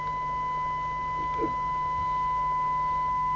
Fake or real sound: real